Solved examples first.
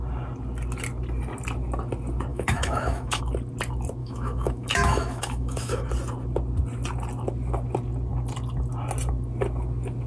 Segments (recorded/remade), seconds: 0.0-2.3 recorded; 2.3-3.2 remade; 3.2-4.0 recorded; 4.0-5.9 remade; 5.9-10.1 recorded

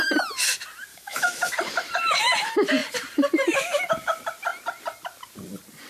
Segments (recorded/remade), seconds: 0.0-0.9 recorded; 0.9-1.5 remade; 1.5-5.9 recorded

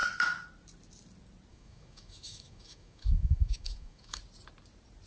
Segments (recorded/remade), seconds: 0.0-1.5 recorded; 1.5-4.2 remade; 4.2-5.1 recorded

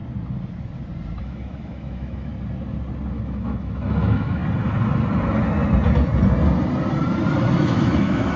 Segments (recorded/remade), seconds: 0.0-1.2 recorded; 1.2-2.3 remade; 2.3-3.1 recorded; 3.1-4.4 remade; 4.4-7.6 recorded; 7.6-8.4 remade

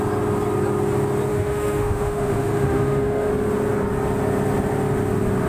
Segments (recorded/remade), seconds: 0.0-1.3 recorded; 1.3-3.3 remade; 3.3-5.5 recorded

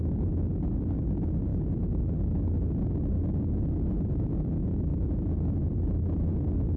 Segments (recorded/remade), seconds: 0.0-6.8 recorded